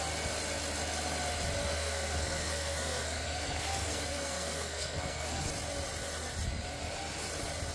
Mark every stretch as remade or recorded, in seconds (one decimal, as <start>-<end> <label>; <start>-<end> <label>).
0.0-1.6 recorded; 1.6-5.5 remade; 5.5-7.7 recorded

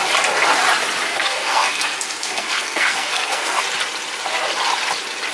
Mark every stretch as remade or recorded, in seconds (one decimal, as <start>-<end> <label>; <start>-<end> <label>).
0.0-1.1 recorded; 1.1-3.6 remade; 3.6-5.3 recorded

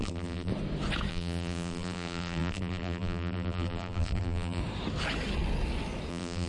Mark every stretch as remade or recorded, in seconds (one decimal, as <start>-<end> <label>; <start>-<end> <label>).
0.0-0.5 remade; 0.5-1.1 recorded; 1.1-4.6 remade; 4.6-6.1 recorded; 6.1-6.5 remade

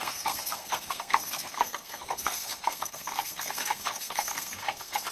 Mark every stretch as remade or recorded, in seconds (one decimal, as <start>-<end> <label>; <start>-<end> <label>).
0.0-5.1 remade

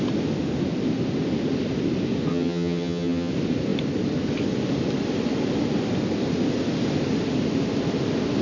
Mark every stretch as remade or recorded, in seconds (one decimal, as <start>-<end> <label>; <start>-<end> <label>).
0.0-2.3 recorded; 2.3-3.3 remade; 3.3-8.4 recorded